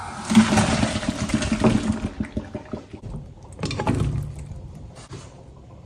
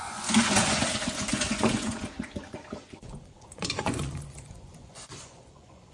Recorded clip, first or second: first